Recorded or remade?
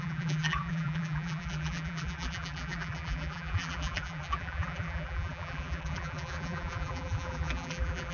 remade